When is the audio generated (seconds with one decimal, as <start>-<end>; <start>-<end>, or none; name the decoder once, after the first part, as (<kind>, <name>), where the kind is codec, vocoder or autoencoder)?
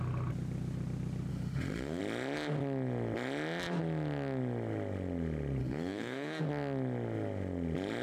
1.3-2.0 (autoencoder, DAC-VAE); 5.6-6.4